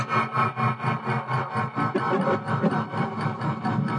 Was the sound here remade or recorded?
recorded